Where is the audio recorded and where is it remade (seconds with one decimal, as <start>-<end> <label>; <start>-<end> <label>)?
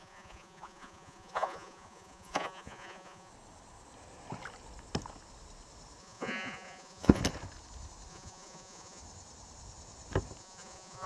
0.0-3.3 remade; 3.3-6.0 recorded; 6.0-7.2 remade; 7.2-8.1 recorded; 8.1-9.0 remade; 9.0-10.4 recorded; 10.4-11.1 remade